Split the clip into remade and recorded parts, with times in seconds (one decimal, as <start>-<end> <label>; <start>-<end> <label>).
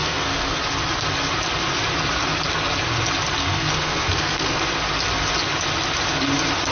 0.0-0.6 remade; 0.6-3.4 recorded; 3.4-4.6 remade; 4.6-6.7 recorded